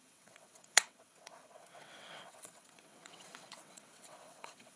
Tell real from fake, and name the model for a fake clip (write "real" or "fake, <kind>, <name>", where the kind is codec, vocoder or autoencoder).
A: fake, vocoder, WaveNeXt